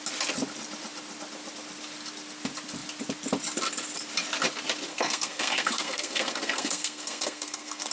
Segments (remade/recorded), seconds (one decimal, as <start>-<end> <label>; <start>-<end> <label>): 0.0-4.9 recorded; 4.9-7.9 remade